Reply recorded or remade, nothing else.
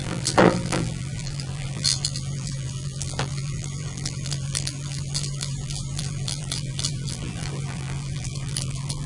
remade